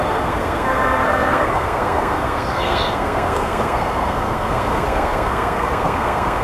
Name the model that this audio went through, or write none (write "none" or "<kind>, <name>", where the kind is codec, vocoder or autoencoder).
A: codec, SNAC